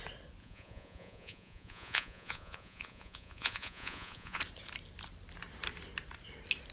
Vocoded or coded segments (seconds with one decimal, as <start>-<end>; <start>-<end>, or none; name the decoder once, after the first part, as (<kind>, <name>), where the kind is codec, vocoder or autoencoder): 0.4-4.4 (vocoder, Vocos)